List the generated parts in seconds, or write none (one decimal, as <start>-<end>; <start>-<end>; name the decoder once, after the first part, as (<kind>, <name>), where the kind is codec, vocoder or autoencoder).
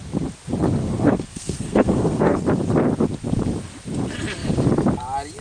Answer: 0.8-2.4 (codec, SNAC)